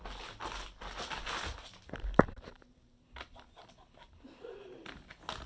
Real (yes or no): yes